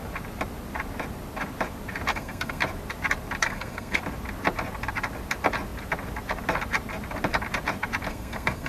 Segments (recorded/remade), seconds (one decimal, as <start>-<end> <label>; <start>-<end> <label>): 0.0-2.1 recorded; 2.1-2.6 remade; 2.6-3.4 recorded; 3.4-4.0 remade; 4.0-8.1 recorded; 8.1-8.7 remade